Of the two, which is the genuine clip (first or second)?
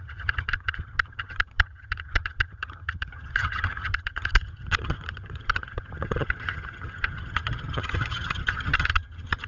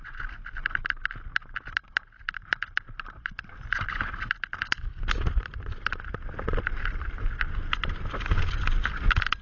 second